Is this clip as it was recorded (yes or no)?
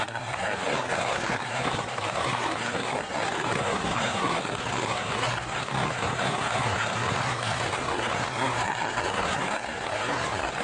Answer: no